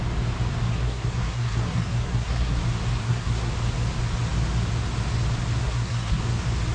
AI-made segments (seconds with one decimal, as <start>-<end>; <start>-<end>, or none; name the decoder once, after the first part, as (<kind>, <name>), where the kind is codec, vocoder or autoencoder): 0.7-2.6 (codec, SNAC); 3.0-3.5; 5.6-6.2